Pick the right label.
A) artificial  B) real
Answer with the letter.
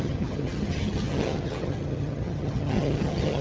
A